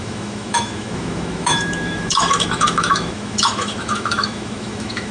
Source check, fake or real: fake